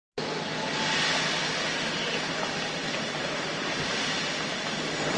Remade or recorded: recorded